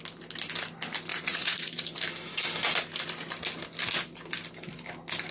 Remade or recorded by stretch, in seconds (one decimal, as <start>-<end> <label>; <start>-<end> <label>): 0.0-1.1 recorded; 1.1-1.7 remade; 1.7-5.3 recorded